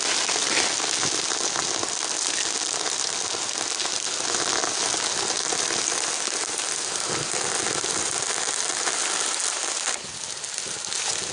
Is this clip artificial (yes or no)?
no